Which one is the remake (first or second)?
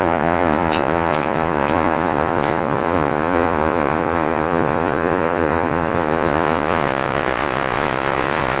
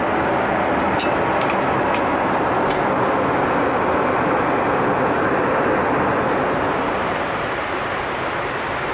first